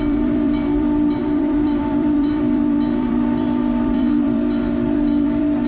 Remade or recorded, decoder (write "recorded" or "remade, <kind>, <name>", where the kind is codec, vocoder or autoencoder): remade, vocoder, BigVGAN v2